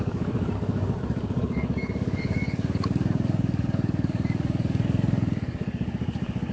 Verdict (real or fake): fake